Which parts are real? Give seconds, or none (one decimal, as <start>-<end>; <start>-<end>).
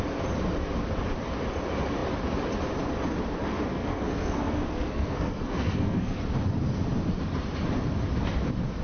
0.0-3.7; 6.2-8.8